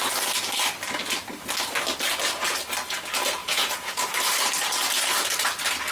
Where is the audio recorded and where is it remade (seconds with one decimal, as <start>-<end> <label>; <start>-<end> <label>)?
0.0-3.4 recorded; 3.4-4.0 remade; 4.0-5.9 recorded